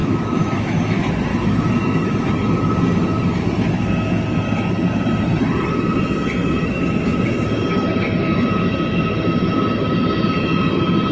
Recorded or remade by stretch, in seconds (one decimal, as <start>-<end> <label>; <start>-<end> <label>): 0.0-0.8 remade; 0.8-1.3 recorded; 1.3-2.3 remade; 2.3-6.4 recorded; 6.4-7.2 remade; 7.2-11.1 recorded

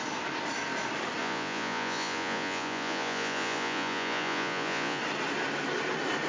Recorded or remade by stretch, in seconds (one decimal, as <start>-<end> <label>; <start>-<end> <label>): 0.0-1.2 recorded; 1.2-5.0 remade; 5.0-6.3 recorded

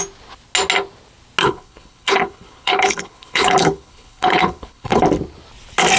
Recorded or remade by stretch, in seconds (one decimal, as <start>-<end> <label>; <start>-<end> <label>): 0.0-1.4 recorded; 1.4-5.0 remade; 5.0-6.0 recorded